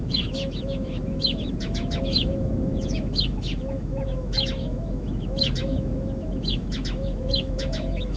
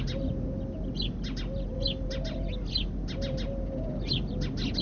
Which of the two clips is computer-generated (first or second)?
first